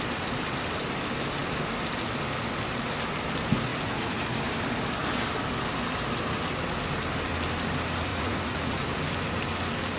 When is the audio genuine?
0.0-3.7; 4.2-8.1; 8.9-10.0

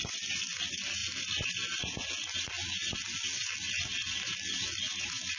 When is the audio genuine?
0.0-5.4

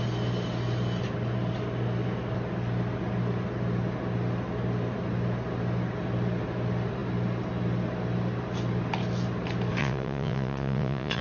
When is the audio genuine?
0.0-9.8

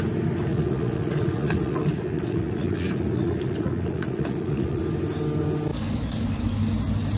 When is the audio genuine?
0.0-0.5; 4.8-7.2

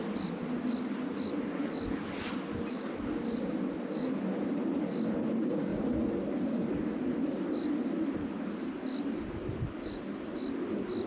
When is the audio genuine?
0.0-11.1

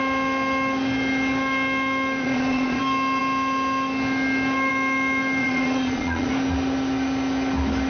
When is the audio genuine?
0.0-2.2; 2.8-5.4; 6.3-7.9